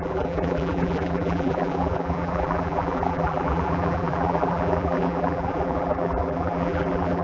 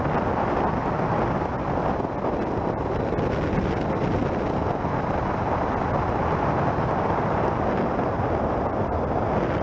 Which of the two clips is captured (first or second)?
second